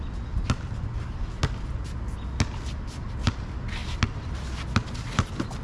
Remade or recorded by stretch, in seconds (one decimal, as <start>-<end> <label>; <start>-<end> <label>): 0.0-5.6 recorded

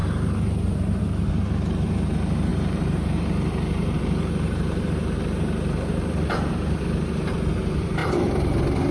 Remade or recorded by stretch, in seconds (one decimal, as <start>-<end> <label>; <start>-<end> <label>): 0.0-1.0 remade; 1.0-2.5 recorded; 2.5-6.8 remade; 6.8-8.0 recorded; 8.0-8.9 remade

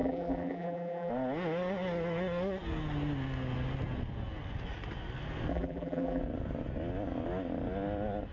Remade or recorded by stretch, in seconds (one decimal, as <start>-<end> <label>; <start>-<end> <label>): 0.0-1.1 remade; 1.1-5.5 recorded; 5.5-6.2 remade; 6.2-8.3 recorded

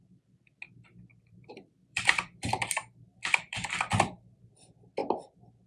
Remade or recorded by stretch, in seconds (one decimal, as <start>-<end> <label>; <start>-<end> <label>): 0.0-1.1 recorded; 1.1-4.5 remade; 4.5-5.7 recorded

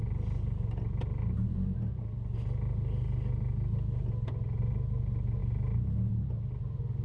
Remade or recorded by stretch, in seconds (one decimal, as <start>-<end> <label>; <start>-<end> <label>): 0.0-7.0 recorded